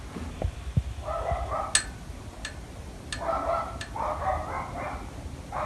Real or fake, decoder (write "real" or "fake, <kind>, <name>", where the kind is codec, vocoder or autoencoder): real